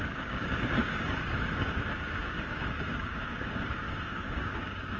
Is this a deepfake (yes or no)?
yes